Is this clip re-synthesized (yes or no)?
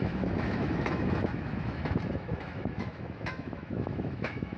yes